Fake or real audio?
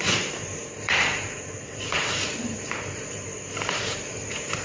fake